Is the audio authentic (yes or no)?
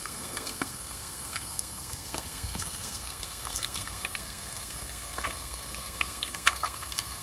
no